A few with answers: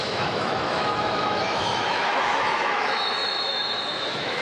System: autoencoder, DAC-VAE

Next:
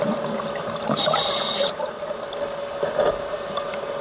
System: vocoder, BigVGAN v2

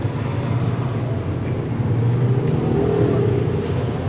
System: none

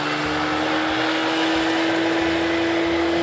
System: none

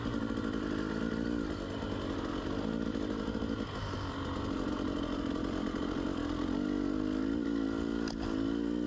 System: none